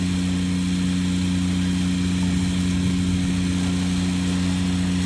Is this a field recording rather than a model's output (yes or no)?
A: yes